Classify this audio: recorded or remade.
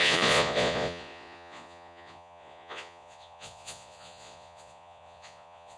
remade